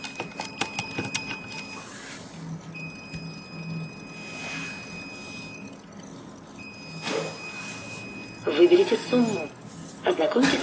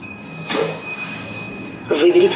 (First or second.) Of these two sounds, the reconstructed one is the second